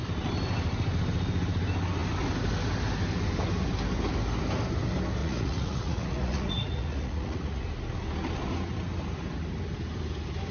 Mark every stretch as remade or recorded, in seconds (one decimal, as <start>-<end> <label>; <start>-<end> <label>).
0.0-5.2 recorded; 5.2-7.6 remade; 7.6-10.5 recorded